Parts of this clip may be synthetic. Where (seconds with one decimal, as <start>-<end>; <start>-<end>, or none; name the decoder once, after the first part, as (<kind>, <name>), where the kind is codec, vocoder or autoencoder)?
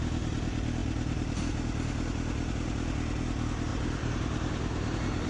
3.7-5.3 (vocoder, BigVGAN v2)